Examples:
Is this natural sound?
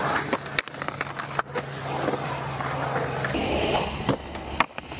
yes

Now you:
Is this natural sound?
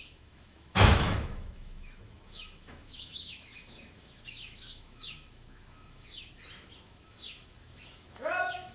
no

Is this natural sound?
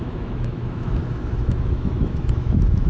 no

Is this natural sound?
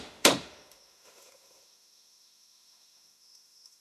no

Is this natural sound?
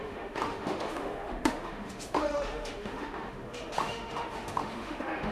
no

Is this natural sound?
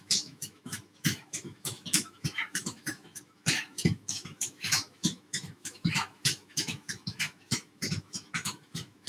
no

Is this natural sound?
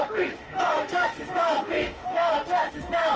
no